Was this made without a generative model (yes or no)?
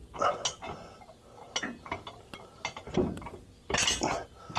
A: yes